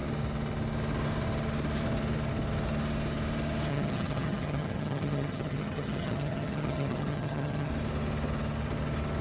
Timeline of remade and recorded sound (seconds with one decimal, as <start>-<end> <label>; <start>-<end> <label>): 0.0-3.7 recorded; 3.7-7.7 remade; 7.7-9.2 recorded